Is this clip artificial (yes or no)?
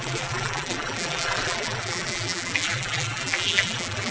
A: yes